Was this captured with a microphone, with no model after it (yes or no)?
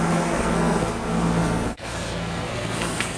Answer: no